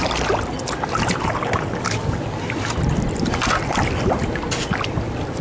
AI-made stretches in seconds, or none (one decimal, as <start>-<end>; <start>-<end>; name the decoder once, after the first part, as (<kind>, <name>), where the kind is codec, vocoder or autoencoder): none